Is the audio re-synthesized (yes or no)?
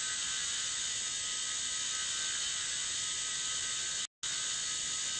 no